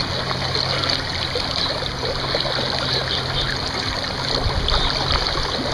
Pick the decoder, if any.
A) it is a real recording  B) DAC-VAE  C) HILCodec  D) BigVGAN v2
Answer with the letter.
A